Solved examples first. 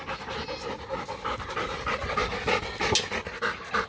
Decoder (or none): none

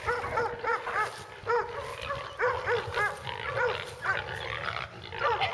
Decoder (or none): none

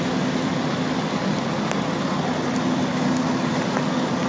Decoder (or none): none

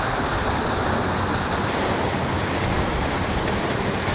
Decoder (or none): none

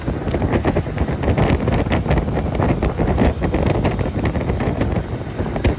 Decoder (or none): none